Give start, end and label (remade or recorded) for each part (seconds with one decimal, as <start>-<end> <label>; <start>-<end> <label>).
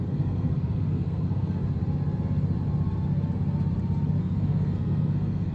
0.0-1.6 remade; 1.6-4.2 recorded; 4.2-5.5 remade